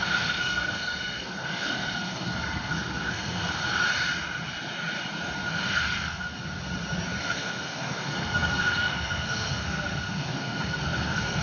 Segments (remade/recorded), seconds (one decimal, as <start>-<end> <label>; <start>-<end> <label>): 0.0-3.6 remade; 3.6-5.5 recorded; 5.5-6.3 remade; 6.3-7.2 recorded; 7.2-11.4 remade